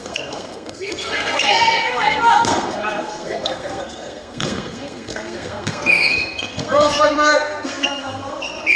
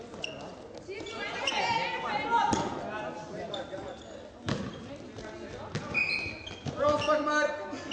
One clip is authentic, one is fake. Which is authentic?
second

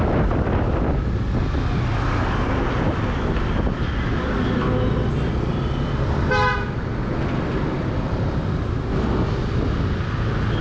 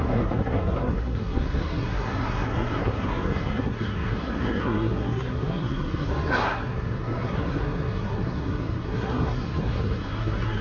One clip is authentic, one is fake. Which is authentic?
first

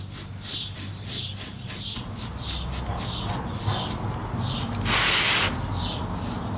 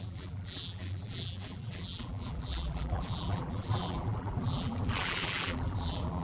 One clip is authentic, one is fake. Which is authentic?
first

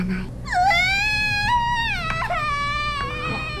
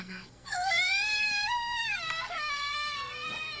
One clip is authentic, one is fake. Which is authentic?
first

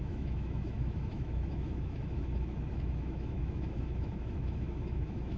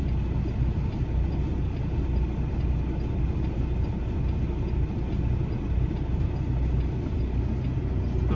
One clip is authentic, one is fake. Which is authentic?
second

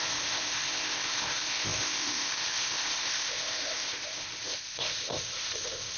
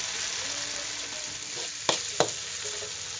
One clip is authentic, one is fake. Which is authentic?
second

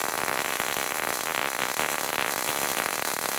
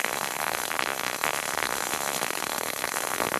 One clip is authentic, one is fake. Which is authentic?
first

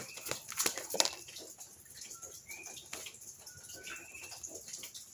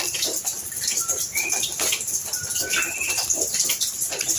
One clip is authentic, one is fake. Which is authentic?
first